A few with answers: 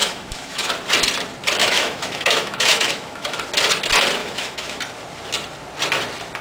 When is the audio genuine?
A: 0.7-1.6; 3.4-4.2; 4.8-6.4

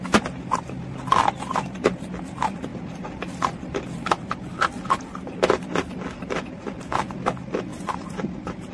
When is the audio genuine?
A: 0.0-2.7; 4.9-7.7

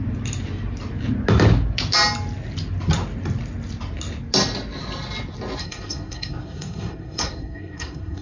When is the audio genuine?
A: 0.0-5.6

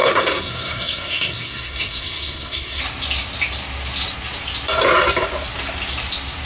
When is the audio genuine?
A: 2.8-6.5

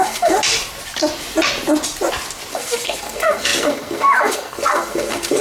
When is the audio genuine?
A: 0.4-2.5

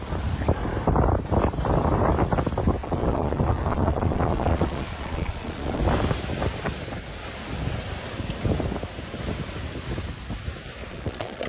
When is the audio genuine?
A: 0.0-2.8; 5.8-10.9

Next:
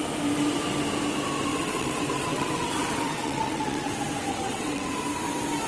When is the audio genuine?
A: 0.0-1.5; 3.9-4.3; 4.9-5.7

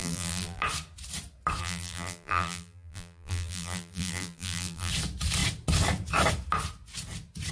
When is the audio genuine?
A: 0.6-1.6; 4.9-7.5